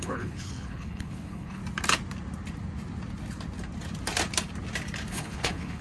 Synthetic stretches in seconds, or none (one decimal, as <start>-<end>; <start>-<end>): 0.0-1.6; 5.1-5.8